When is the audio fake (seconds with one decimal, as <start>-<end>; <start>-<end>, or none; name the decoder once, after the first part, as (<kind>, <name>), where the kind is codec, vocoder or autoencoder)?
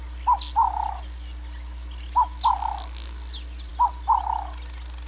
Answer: none